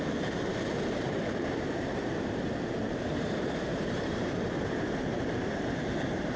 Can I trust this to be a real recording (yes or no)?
no